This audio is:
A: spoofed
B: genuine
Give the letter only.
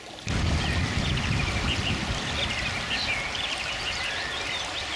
B